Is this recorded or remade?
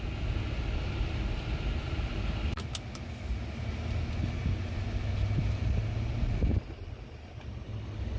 recorded